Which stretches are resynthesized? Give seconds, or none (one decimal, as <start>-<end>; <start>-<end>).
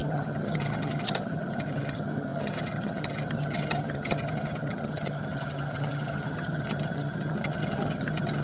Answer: 0.0-8.4